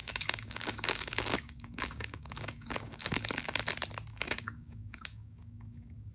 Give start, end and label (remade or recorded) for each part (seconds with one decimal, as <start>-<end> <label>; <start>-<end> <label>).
0.0-3.6 remade; 3.6-4.1 recorded; 4.1-6.1 remade